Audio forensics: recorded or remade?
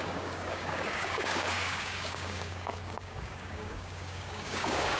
remade